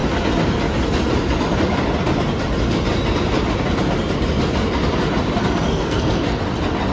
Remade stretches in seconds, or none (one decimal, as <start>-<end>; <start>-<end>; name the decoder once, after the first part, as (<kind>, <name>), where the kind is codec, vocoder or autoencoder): 5.7-6.4 (codec, SNAC)